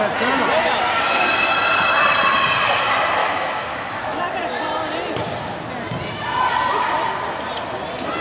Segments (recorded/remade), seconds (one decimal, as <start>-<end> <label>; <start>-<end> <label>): 0.0-3.2 recorded; 3.2-4.2 remade; 4.2-8.2 recorded